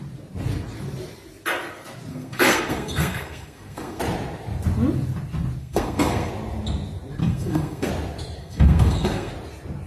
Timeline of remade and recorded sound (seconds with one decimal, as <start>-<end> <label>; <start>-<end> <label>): 0.0-2.1 recorded; 2.1-4.0 remade; 4.0-5.6 recorded; 5.6-6.3 remade; 6.3-7.2 recorded; 7.2-7.9 remade; 7.9-8.4 recorded; 8.4-9.3 remade; 9.3-9.9 recorded